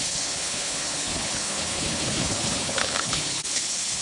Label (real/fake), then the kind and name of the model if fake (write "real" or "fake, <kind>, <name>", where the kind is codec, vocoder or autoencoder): fake, codec, HILCodec